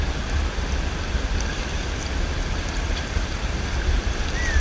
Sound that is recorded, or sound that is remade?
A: recorded